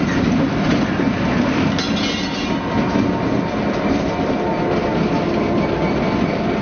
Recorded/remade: recorded